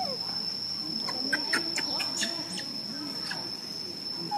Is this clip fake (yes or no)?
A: no